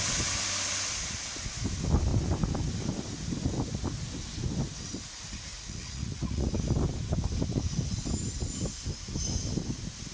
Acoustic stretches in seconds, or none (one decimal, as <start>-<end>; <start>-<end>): 0.0-5.5; 6.5-10.1